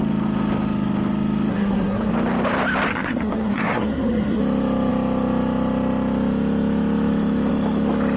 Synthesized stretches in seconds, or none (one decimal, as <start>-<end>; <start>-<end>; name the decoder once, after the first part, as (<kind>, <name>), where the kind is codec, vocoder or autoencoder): 1.5-2.1 (codec, SNAC); 2.9-4.4